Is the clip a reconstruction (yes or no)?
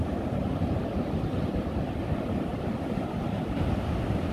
no